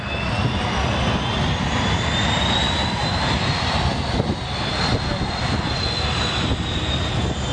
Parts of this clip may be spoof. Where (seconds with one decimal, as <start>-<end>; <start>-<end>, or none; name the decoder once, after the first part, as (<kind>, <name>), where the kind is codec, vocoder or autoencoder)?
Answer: 3.0-4.4 (vocoder, BigVGAN v2)